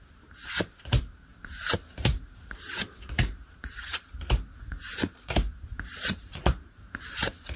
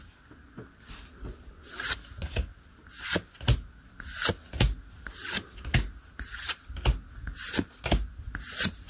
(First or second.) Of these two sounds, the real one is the second